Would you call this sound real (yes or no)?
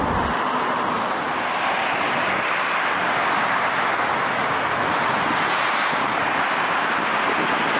yes